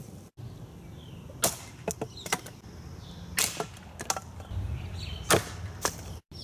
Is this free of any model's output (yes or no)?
yes